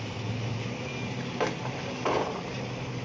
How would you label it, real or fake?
real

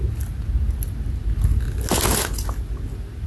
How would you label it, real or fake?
real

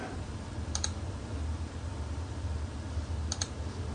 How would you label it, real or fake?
fake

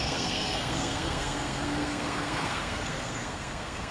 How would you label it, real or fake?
fake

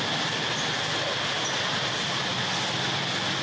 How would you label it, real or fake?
real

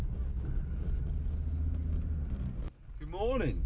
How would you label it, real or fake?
real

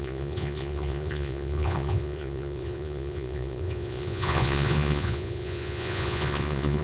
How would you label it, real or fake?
fake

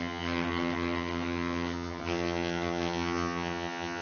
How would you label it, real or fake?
fake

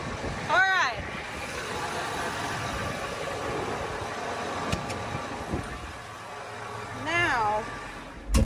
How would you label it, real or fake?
real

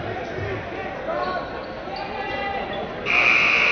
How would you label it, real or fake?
real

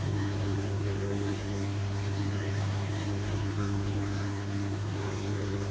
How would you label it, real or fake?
fake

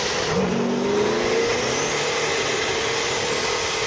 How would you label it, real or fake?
real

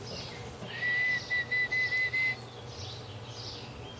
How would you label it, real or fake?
real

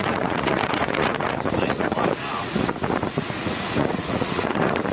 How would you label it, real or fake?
fake